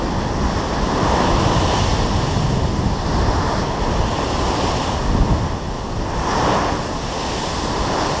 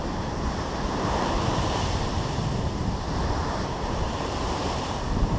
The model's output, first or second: second